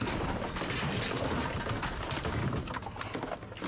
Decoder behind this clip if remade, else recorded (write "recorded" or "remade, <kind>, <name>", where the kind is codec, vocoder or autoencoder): recorded